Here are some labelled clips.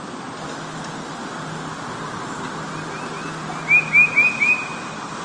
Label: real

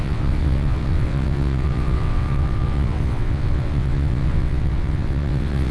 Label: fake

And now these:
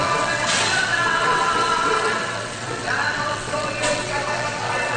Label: fake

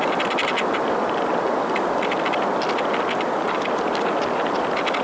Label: real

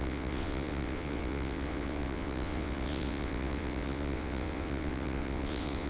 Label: fake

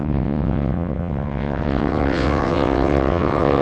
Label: fake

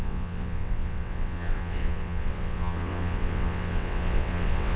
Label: fake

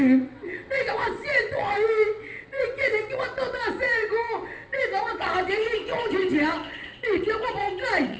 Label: fake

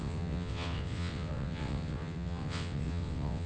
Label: fake